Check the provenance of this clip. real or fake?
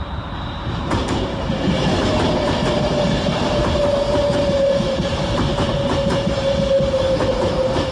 fake